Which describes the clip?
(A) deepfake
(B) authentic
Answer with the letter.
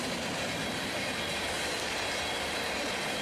B